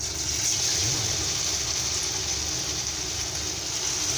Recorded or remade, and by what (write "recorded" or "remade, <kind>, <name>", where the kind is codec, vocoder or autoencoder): recorded